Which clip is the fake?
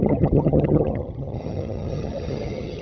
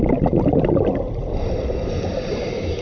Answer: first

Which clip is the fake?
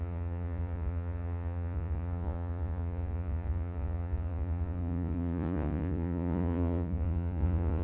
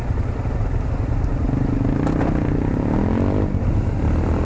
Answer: first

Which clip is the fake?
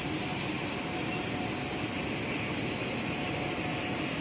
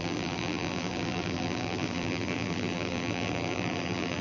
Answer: second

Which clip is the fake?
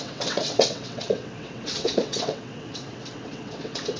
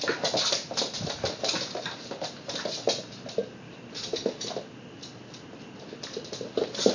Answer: first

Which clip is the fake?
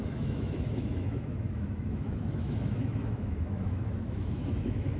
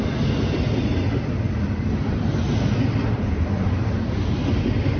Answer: first